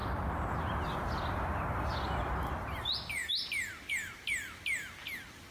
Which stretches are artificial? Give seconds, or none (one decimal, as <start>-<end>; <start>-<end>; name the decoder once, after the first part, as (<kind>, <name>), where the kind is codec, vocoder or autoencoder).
none